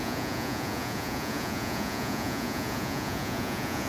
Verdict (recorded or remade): remade